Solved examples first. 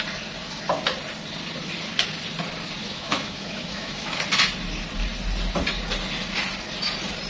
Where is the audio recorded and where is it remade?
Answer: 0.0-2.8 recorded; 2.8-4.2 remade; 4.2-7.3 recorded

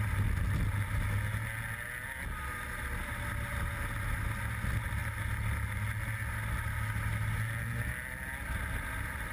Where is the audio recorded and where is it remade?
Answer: 0.0-9.3 recorded

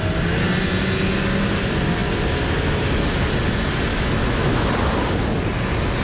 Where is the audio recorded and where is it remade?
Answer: 0.0-3.9 recorded; 3.9-4.7 remade; 4.7-6.0 recorded

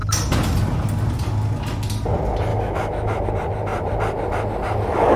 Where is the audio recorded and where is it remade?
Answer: 0.0-2.5 recorded; 2.5-3.3 remade; 3.3-5.2 recorded

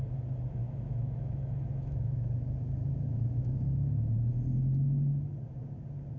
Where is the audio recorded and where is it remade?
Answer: 0.0-0.6 recorded; 0.6-4.3 remade; 4.3-6.2 recorded

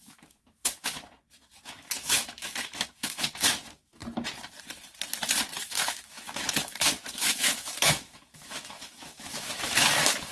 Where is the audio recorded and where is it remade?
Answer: 0.0-4.0 remade; 4.0-5.6 recorded; 5.6-10.3 remade